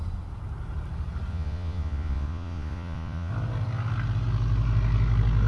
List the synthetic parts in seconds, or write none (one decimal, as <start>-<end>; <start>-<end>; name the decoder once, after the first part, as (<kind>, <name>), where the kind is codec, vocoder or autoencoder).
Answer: 1.3-3.3 (vocoder, Vocos)